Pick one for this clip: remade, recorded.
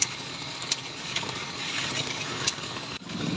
remade